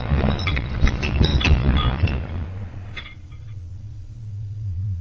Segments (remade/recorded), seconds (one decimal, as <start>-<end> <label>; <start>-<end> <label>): 0.0-5.0 remade